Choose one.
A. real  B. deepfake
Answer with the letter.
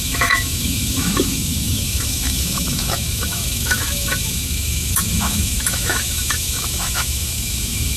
B